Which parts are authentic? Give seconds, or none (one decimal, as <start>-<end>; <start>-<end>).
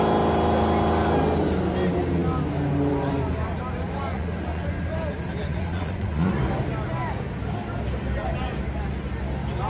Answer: 0.0-4.1; 4.7-5.5; 6.4-9.7